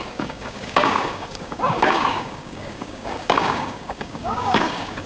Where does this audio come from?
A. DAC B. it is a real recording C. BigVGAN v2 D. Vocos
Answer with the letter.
A